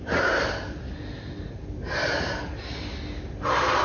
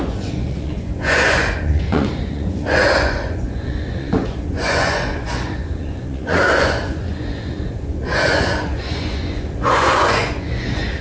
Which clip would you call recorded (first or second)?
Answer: first